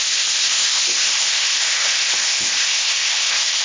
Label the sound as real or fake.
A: fake